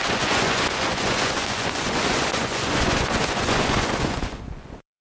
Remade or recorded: remade